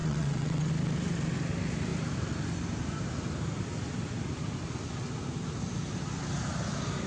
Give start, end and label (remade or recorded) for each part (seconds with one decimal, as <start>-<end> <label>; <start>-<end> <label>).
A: 0.0-0.7 remade; 0.7-7.1 recorded